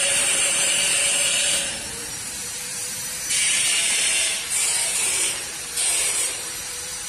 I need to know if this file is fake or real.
fake